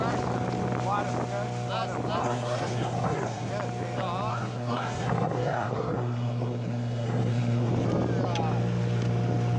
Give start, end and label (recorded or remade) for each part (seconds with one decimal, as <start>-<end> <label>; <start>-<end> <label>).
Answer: 0.0-2.2 recorded; 2.2-3.5 remade; 3.5-4.3 recorded; 4.3-7.7 remade; 7.7-9.6 recorded